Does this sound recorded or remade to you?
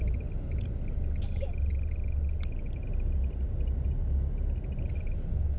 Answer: recorded